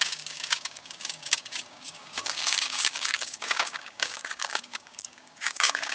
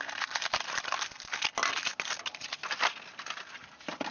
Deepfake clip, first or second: first